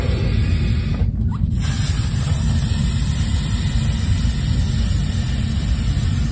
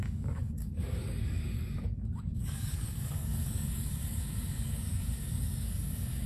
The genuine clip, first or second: first